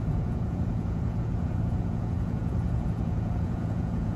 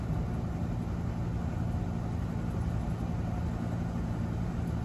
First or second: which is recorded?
second